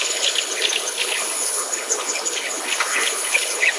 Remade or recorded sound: remade